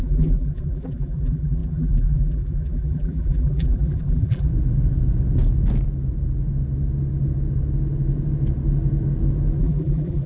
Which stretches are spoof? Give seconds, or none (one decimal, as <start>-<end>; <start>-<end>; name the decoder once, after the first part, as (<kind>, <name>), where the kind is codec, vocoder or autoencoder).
0.0-4.5 (vocoder, BigVGAN v2); 9.6-10.3